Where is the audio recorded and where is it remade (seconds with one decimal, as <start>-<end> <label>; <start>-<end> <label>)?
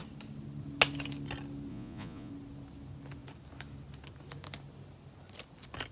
0.0-1.7 recorded; 1.7-2.3 remade; 2.3-5.9 recorded